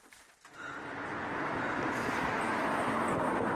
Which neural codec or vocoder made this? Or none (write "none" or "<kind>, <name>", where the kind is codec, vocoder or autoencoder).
none